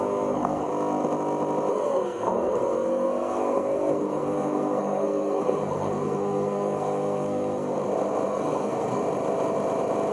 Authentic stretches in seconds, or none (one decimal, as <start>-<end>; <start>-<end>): 0.7-1.7; 7.8-8.3; 9.0-10.1